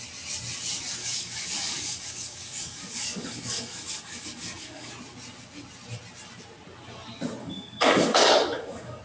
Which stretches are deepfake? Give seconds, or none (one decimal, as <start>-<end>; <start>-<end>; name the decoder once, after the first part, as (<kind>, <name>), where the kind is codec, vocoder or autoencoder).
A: 1.0-4.9 (codec, DAC); 7.4-9.0